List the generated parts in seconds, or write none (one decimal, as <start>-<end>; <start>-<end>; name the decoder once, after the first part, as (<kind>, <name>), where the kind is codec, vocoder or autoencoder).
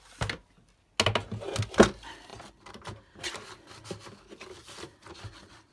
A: none